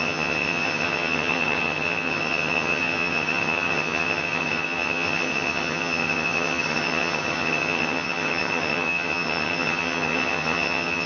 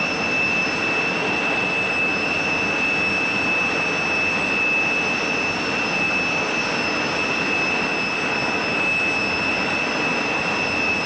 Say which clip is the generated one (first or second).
first